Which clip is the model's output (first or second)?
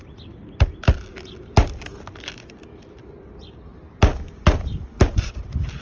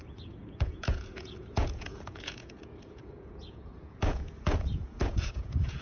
second